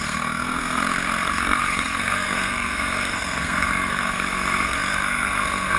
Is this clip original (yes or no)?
no